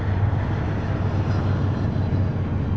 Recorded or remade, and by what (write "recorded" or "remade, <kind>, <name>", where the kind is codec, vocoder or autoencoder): recorded